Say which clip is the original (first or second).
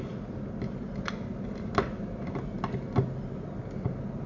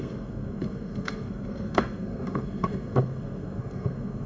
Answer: first